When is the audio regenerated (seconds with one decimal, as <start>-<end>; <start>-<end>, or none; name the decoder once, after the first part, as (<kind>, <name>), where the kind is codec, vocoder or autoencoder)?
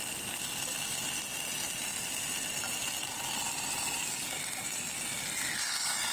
none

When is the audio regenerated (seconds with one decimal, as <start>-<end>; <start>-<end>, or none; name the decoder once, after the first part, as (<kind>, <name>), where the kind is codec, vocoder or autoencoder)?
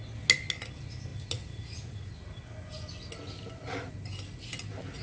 none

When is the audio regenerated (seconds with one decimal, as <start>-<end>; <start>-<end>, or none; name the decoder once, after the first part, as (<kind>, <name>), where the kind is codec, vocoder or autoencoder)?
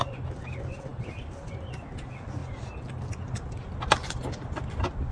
none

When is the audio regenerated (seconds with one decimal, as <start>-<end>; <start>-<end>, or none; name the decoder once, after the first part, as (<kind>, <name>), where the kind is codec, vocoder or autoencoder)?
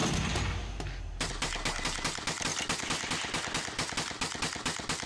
none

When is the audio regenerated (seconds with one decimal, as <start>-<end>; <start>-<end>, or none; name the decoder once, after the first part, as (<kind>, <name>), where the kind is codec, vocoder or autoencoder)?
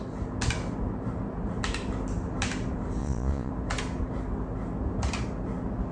3.0-3.5 (vocoder, Vocos)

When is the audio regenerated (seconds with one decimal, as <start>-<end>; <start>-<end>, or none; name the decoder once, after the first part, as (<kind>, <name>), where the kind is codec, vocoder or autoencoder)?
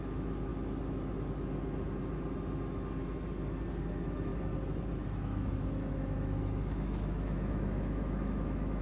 0.0-0.5 (autoencoder, DAC-VAE); 3.9-4.3; 4.9-8.8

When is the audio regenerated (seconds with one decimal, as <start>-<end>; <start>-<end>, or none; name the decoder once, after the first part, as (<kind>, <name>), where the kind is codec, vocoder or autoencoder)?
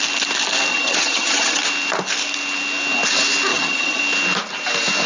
0.7-1.6 (vocoder, HiFi-GAN); 3.5-4.0